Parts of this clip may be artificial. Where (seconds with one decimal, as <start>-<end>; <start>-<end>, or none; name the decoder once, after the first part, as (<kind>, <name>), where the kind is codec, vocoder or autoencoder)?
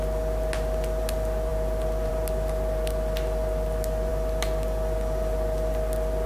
none